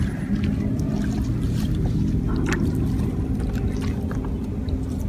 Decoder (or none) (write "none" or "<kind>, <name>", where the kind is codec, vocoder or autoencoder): none